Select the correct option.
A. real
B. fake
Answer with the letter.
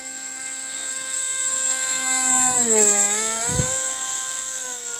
B